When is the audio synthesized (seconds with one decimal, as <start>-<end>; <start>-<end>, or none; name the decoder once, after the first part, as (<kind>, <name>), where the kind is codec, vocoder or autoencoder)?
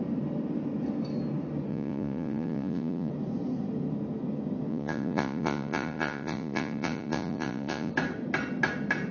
1.7-3.1 (vocoder, Vocos); 4.7-7.9